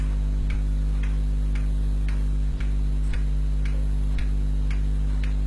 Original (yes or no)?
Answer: no